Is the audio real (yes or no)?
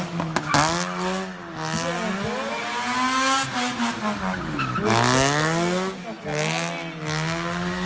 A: yes